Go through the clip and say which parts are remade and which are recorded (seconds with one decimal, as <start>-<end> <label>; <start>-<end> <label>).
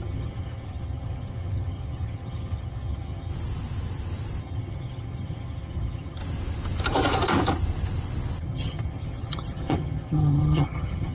0.0-3.3 remade; 3.3-4.4 recorded; 4.4-6.2 remade; 6.2-8.4 recorded; 8.4-11.1 remade